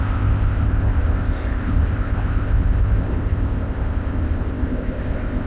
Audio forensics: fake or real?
fake